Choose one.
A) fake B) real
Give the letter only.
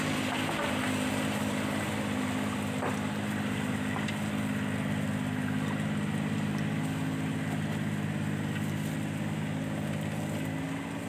B